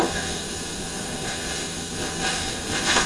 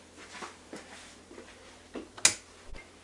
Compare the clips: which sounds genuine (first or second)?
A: second